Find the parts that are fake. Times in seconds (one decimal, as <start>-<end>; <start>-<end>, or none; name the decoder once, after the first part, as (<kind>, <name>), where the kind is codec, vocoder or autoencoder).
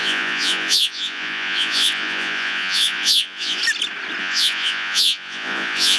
0.0-3.6 (vocoder, Vocos); 4.2-6.0